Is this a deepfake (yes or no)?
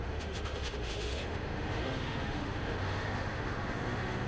yes